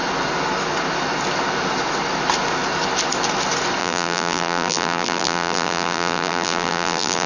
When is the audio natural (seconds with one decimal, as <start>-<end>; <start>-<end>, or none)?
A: 0.0-3.8